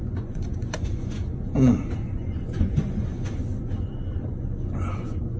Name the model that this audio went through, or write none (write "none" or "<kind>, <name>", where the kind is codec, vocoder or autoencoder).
vocoder, Vocos